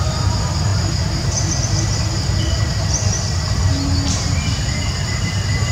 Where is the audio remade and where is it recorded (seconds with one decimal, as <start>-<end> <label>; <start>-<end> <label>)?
0.0-5.7 recorded